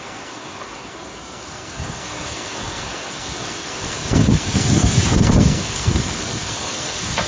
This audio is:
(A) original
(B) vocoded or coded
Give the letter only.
B